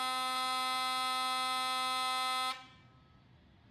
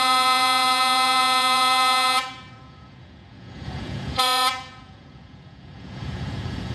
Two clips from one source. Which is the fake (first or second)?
second